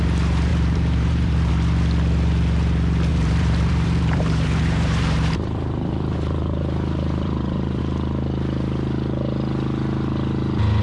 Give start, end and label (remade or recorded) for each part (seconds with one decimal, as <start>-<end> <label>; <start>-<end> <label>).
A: 0.0-0.5 recorded; 0.5-1.5 remade; 1.5-3.1 recorded; 3.1-7.8 remade; 7.8-10.8 recorded